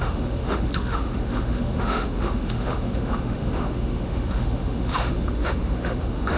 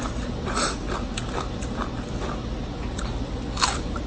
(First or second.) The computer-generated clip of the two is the first